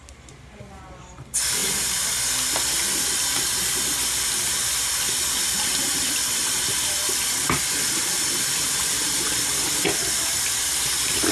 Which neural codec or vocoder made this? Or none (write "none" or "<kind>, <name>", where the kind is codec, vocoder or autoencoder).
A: none